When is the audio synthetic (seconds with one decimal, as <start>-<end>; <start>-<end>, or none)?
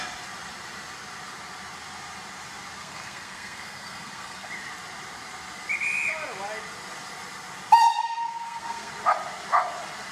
2.8-4.5; 8.0-8.9